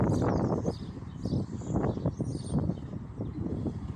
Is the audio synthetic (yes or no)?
no